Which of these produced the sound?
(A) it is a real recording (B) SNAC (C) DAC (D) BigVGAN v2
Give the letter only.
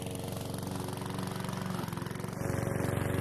A